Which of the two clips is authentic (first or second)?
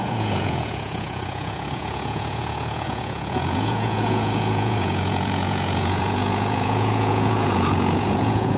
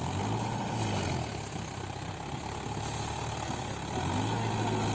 second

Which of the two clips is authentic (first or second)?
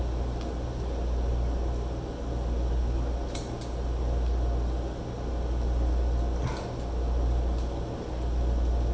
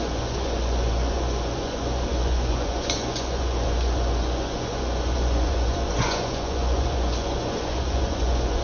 first